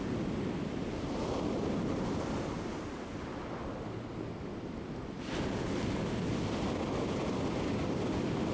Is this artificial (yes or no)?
no